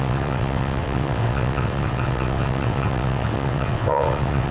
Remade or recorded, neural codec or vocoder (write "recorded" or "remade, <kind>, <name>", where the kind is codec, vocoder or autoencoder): remade, vocoder, WaveNeXt